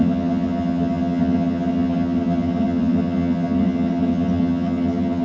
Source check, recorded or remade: remade